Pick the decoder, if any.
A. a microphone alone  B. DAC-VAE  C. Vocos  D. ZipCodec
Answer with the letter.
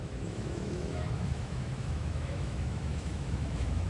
B